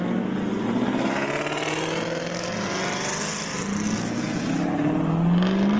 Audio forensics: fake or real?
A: real